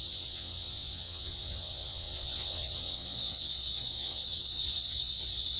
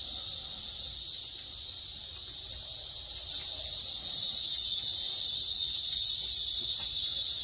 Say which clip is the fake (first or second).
first